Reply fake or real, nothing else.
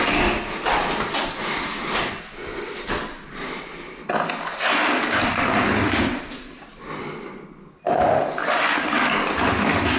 real